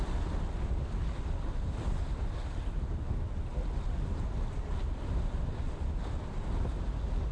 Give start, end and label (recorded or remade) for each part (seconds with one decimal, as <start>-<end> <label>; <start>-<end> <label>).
0.0-7.3 recorded